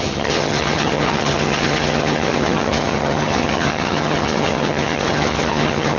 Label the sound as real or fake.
fake